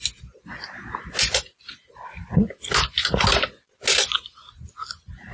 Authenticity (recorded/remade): recorded